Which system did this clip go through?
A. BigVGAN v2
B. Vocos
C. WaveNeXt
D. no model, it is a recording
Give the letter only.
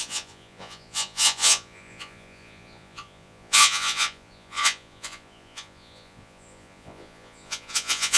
B